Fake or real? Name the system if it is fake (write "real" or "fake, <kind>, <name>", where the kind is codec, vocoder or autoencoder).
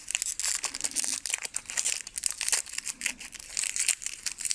real